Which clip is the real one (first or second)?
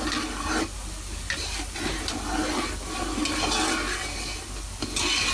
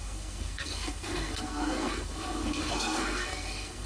first